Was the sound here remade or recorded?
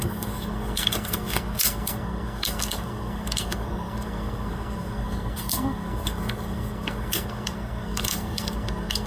remade